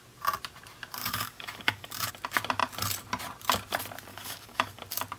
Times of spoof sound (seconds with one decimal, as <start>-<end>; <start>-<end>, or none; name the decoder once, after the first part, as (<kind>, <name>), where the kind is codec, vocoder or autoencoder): 1.0-2.1 (codec, DAC); 4.1-4.8